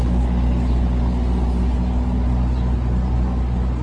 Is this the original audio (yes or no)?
yes